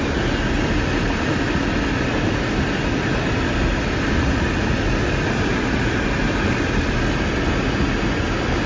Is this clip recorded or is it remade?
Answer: recorded